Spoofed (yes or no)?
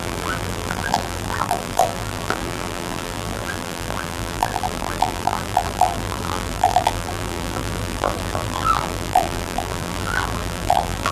yes